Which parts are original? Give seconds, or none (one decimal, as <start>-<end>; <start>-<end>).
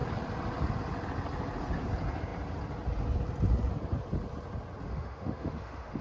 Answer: 0.0-4.9